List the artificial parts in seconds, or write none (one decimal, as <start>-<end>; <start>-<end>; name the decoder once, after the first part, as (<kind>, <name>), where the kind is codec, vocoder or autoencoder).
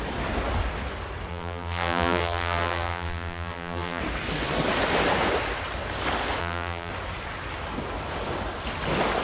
1.3-4.0 (vocoder, BigVGAN v2); 6.4-6.9